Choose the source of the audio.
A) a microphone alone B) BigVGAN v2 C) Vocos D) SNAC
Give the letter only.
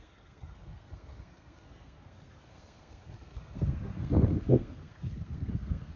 D